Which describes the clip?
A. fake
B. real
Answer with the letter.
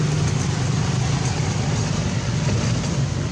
B